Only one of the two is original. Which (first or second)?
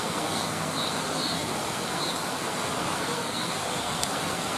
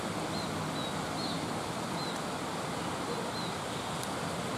second